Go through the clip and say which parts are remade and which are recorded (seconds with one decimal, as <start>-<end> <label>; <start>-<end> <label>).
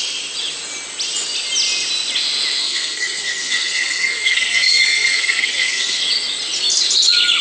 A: 0.0-2.6 recorded; 2.6-6.0 remade; 6.0-7.4 recorded